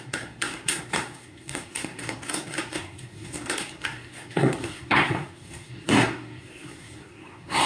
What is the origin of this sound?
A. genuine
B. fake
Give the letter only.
B